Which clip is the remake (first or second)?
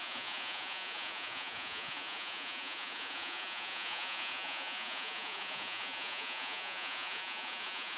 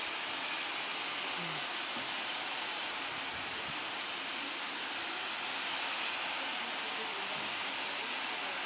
first